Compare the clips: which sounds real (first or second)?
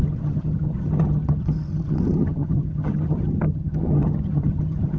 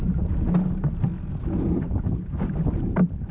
second